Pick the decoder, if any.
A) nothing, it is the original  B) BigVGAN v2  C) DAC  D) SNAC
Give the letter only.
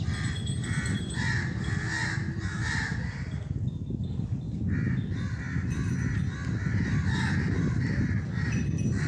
A